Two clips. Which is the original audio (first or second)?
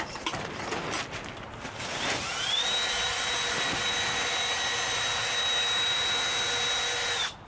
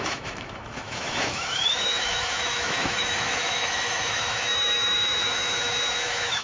first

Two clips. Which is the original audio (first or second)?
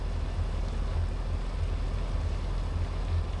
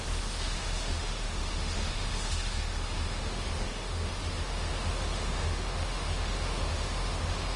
first